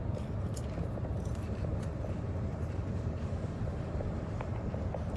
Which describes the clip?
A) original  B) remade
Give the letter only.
B